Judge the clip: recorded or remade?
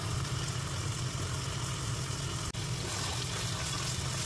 recorded